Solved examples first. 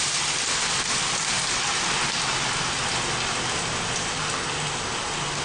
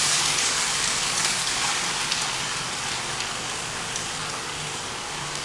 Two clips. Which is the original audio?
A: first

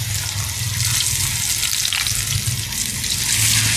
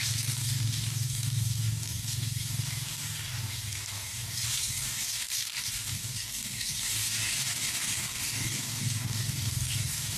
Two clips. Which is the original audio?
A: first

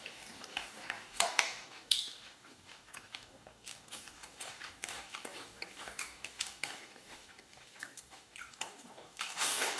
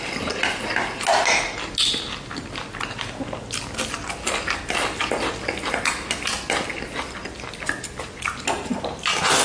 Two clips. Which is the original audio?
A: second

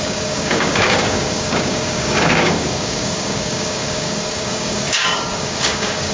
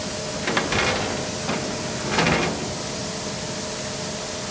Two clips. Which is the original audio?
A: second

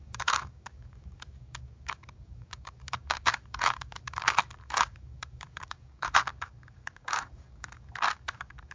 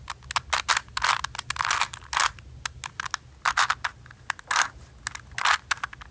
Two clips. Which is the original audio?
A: second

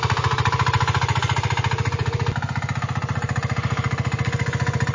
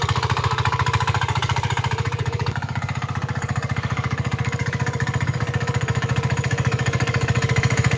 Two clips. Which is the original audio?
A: first